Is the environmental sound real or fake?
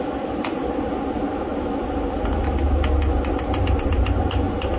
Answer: real